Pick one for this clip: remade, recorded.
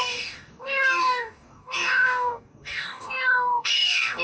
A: remade